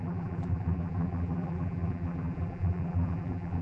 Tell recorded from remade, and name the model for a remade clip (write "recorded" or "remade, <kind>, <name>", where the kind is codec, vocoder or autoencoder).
remade, vocoder, BigVGAN v2